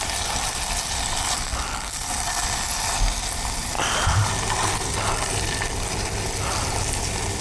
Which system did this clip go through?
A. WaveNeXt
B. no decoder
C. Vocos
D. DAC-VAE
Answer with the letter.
B